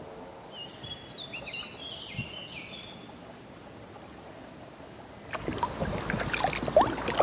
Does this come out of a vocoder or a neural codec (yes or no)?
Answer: no